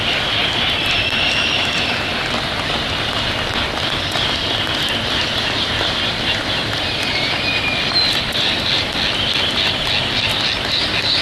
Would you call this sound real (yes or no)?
yes